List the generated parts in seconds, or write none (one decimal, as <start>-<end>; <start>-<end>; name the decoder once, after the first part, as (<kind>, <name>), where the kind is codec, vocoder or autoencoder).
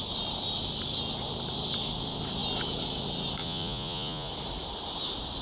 3.4-4.3 (vocoder, Vocos)